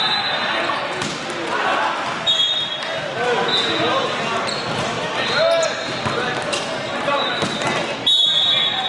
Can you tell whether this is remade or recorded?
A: recorded